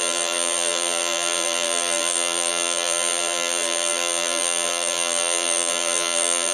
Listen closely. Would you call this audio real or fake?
fake